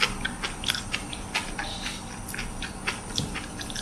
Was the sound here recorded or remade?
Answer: recorded